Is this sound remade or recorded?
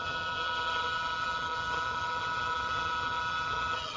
remade